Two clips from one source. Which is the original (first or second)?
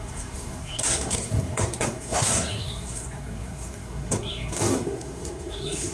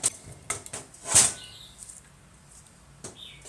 second